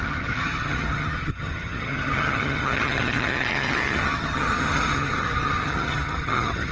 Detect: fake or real fake